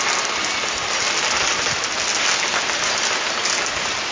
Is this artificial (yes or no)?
no